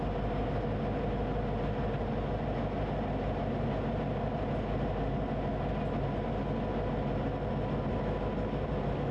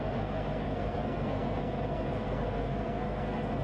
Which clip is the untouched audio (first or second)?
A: first